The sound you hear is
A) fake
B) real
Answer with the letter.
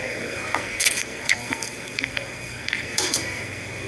A